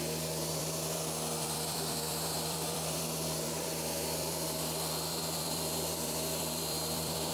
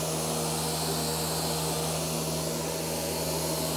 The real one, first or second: second